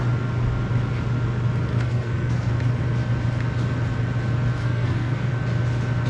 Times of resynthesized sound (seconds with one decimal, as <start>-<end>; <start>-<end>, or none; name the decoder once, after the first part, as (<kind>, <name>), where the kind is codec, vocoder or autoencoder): 1.7-2.5 (codec, SNAC); 4.6-5.3

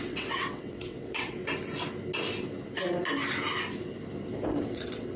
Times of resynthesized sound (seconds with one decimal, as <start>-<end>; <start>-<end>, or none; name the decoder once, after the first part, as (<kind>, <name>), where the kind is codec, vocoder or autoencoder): 0.0-1.4 (vocoder, WaveNeXt); 4.5-5.2